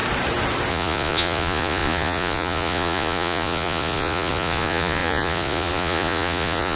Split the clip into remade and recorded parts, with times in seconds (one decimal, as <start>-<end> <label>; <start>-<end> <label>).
0.0-0.7 recorded; 0.7-6.8 remade